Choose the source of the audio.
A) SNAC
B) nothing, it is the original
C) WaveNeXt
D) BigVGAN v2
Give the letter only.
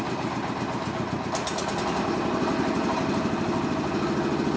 B